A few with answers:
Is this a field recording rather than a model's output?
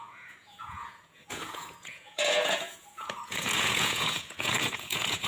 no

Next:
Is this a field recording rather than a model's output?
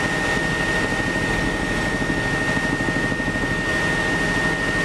yes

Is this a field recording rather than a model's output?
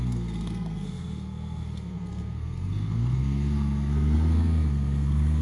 no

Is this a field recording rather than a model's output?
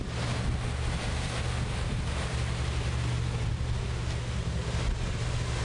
yes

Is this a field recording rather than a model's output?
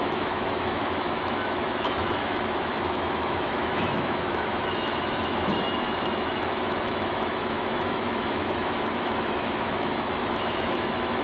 no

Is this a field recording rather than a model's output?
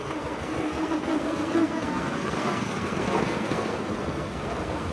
no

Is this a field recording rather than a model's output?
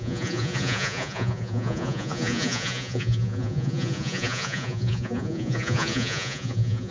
no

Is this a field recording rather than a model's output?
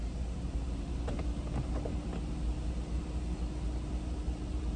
yes